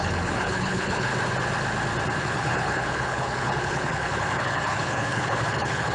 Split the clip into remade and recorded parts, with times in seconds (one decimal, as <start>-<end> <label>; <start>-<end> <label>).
0.0-1.1 remade; 1.1-2.2 recorded; 2.2-5.9 remade